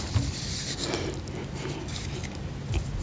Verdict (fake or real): real